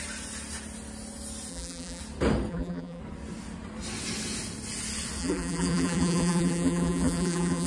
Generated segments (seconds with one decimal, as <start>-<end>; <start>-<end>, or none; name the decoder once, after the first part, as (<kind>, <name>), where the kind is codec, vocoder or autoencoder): 1.5-2.0 (vocoder, BigVGAN v2); 2.5-3.0; 5.2-7.7